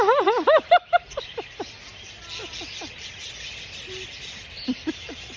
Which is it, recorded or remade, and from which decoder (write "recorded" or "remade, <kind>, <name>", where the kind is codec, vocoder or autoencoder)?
recorded